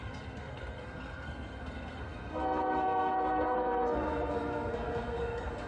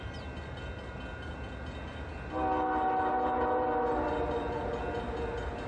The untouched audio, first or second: second